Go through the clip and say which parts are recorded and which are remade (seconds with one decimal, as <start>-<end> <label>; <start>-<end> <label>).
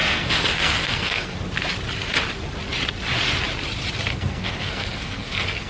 0.0-1.4 remade; 1.4-4.1 recorded; 4.1-5.7 remade